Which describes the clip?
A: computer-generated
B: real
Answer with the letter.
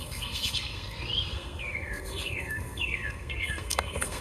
A